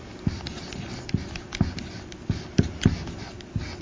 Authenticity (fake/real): real